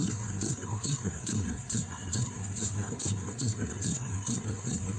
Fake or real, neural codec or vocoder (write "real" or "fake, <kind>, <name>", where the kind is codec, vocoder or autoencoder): fake, codec, SNAC